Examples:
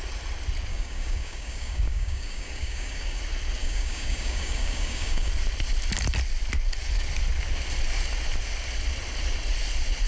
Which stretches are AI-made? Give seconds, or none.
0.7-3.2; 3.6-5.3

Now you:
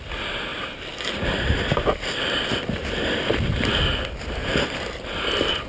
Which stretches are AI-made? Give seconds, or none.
none